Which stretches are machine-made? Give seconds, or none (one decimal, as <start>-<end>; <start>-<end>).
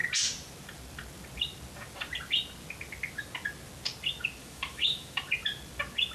4.4-5.2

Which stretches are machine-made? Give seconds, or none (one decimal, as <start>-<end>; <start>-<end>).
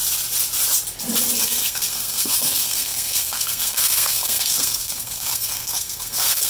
1.4-6.5